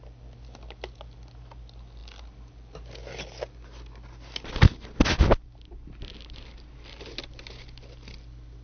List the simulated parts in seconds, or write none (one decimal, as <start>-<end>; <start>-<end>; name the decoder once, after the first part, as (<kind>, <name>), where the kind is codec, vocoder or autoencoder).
none